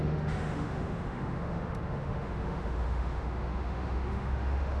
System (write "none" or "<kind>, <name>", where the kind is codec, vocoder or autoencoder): autoencoder, DAC-VAE